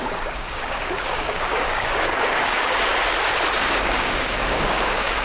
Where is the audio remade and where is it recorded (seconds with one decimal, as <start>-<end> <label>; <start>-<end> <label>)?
0.0-2.9 remade; 2.9-3.6 recorded; 3.6-5.2 remade